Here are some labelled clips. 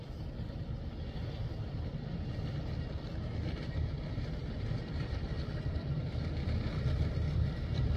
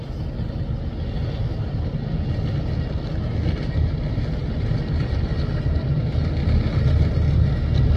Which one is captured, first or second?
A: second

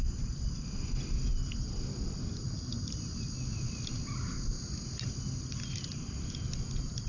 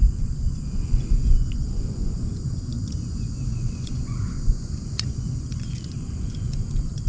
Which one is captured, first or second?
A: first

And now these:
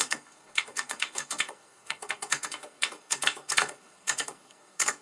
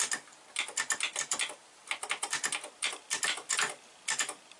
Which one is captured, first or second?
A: second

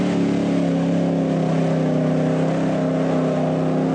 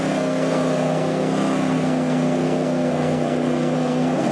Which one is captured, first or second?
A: first